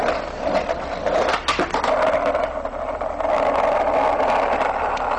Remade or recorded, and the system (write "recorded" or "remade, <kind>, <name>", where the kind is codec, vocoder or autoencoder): recorded